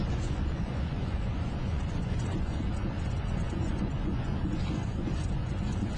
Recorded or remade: remade